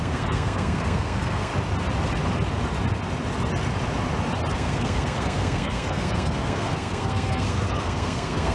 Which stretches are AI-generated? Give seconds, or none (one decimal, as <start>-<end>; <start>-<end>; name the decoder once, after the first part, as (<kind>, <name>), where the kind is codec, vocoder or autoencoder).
0.0-1.5 (codec, SNAC); 4.5-8.5